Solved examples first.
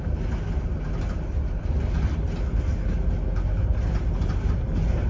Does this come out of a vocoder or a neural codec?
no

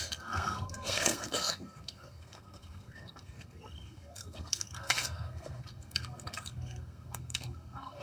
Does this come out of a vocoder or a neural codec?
yes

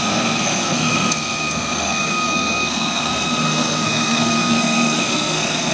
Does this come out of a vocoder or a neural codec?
yes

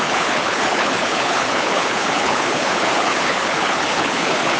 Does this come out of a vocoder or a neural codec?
yes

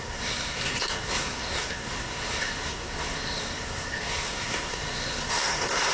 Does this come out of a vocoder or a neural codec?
yes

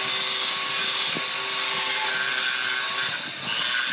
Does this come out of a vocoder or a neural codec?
no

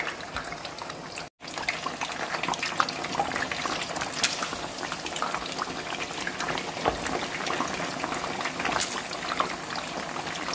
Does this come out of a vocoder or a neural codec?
no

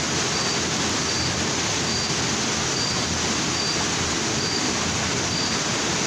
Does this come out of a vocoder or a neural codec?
no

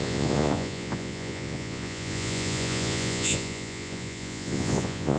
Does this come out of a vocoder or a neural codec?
yes